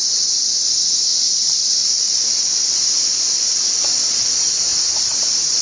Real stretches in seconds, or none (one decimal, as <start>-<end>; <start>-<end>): none